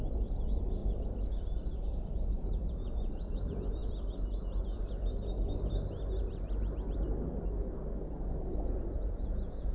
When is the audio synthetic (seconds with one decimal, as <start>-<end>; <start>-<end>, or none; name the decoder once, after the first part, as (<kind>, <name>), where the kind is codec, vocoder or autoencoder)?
0.0-0.8 (vocoder, Vocos); 1.7-3.8; 8.1-9.7